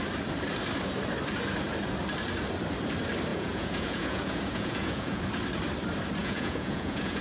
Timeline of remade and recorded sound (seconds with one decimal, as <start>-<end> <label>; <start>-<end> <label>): 0.0-3.3 recorded; 3.3-5.2 remade; 5.2-6.2 recorded; 6.2-7.2 remade